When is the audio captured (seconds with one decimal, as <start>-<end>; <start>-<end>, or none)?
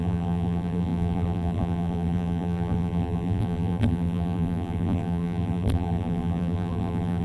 none